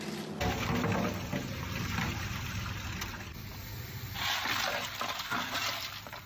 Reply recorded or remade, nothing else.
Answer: recorded